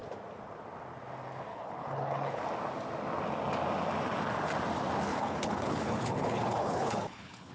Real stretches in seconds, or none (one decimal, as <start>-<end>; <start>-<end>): 0.0-1.5; 2.4-5.1